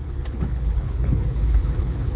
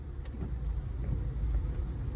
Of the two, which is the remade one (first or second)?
first